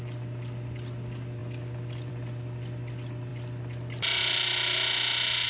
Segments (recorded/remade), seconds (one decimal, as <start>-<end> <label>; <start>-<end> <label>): 0.0-5.5 recorded